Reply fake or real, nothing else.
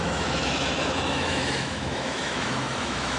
fake